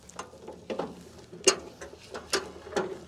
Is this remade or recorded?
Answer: recorded